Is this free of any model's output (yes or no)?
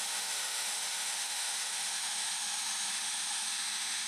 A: no